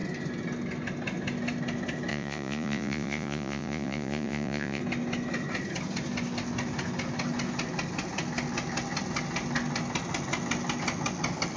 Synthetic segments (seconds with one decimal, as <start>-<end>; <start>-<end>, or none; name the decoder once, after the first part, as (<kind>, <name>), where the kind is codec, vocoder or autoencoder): 2.1-4.8 (vocoder, Vocos)